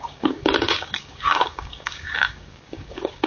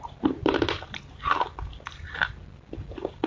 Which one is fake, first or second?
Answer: first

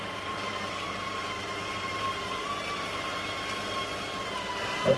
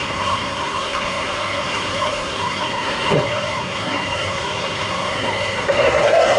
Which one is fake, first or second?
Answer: second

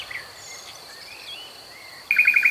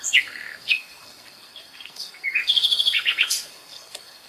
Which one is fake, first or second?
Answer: second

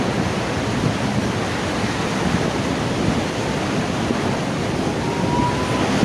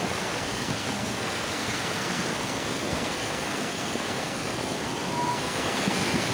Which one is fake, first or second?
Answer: second